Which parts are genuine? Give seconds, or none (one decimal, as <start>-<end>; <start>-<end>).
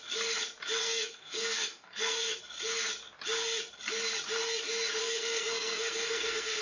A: 0.0-0.8; 2.4-5.0